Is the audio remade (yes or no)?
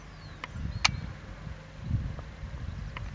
no